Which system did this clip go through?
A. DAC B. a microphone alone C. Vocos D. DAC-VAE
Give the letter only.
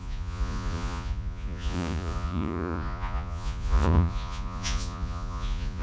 C